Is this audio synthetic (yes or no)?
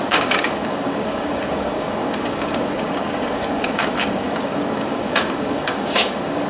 yes